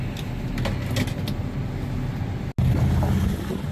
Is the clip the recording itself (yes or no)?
yes